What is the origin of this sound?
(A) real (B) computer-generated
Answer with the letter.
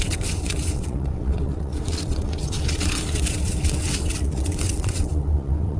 B